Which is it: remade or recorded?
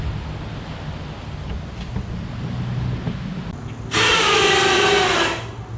recorded